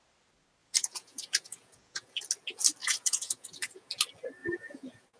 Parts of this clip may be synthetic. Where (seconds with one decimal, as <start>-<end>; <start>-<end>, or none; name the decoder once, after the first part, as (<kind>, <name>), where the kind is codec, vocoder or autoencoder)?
0.6-2.2 (vocoder, Vocos); 2.8-3.9; 4.4-5.2